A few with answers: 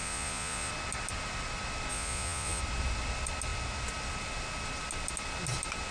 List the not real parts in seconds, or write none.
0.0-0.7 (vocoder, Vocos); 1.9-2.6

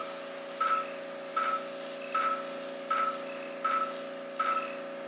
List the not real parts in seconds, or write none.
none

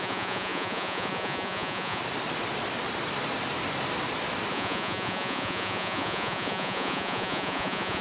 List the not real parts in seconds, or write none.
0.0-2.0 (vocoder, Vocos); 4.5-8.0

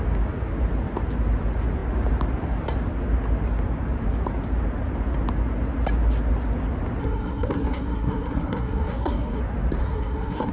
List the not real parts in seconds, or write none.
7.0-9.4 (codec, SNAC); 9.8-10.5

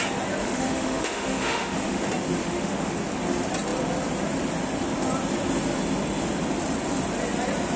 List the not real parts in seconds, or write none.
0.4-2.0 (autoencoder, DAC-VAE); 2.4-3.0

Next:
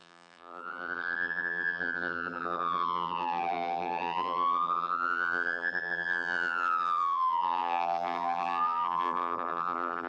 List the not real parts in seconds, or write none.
0.0-10.1 (vocoder, BigVGAN v2)